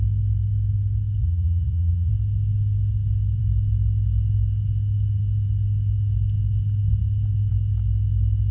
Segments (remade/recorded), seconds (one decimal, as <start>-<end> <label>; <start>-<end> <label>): 0.0-1.2 recorded; 1.2-2.1 remade; 2.1-8.5 recorded